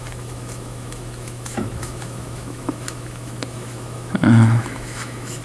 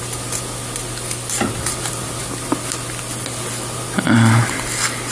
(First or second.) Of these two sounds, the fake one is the first